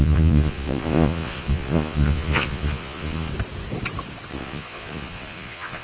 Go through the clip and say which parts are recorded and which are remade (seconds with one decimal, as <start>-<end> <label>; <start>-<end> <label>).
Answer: 0.0-3.3 remade; 3.3-4.3 recorded; 4.3-5.8 remade